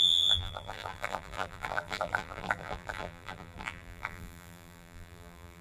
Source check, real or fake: fake